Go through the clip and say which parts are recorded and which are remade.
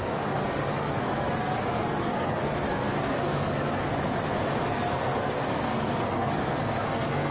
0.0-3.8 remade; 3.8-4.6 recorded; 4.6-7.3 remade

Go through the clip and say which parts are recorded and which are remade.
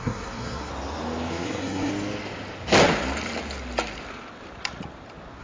0.0-0.7 remade; 0.7-1.3 recorded; 1.3-1.9 remade; 1.9-5.4 recorded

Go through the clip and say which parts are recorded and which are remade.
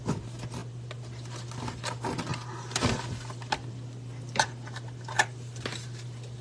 0.0-6.4 recorded